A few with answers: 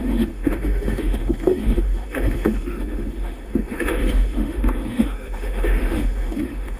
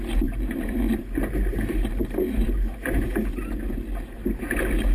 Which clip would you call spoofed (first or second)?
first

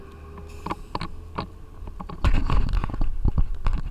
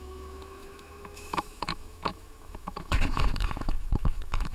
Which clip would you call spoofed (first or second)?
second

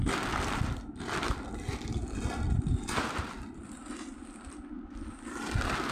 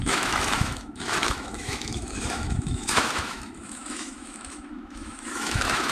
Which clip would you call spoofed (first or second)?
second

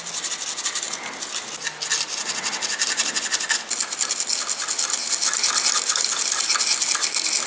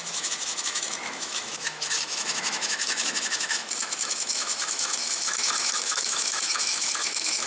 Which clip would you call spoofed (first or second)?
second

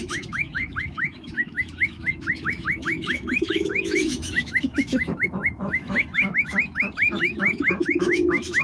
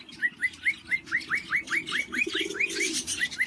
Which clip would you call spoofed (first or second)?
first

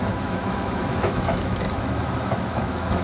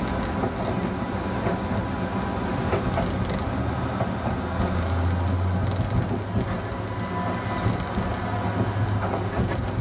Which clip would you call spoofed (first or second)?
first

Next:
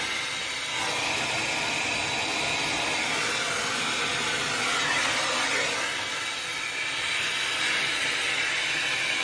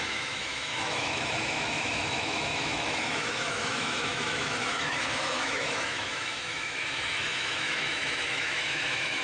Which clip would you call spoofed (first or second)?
second